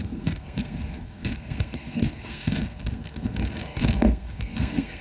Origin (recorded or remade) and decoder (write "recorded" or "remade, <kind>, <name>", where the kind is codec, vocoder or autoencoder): remade, codec, SNAC